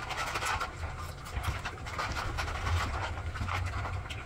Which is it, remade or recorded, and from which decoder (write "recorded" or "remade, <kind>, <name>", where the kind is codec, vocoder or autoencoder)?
recorded